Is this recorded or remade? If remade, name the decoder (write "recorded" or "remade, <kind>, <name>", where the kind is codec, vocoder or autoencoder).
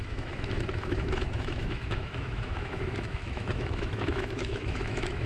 remade, autoencoder, DAC-VAE